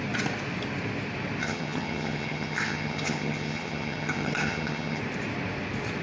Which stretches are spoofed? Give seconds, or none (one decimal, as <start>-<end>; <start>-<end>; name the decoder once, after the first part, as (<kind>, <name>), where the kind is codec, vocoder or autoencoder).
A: 1.4-5.0 (vocoder, HiFi-GAN)